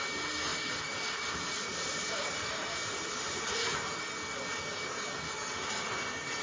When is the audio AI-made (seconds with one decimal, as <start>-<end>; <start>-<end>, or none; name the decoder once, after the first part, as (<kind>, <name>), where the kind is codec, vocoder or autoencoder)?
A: 0.5-4.0 (vocoder, BigVGAN v2)